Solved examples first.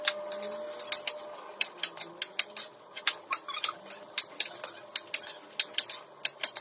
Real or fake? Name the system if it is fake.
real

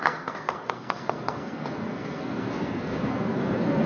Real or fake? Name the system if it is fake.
fake, codec, SNAC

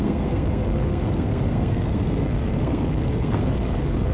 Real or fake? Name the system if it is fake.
fake, codec, SNAC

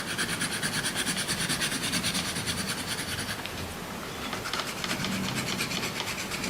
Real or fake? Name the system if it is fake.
real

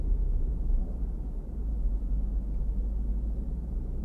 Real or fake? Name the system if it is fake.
real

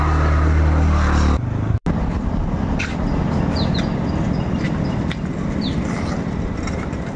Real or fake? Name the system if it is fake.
real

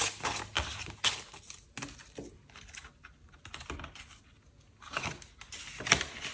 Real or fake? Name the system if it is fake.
real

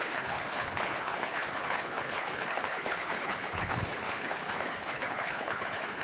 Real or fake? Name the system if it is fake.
fake, codec, HILCodec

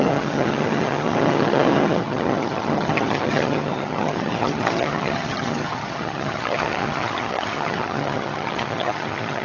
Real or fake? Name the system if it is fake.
fake, vocoder, HiFi-GAN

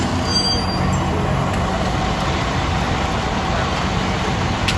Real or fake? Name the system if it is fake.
real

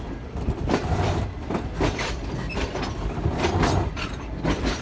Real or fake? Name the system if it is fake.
fake, vocoder, BigVGAN v2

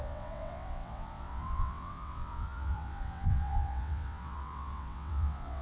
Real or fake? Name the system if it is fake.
fake, vocoder, WaveNeXt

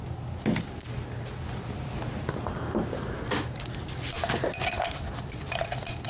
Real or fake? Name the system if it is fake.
real